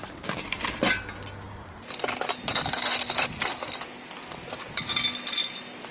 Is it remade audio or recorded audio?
recorded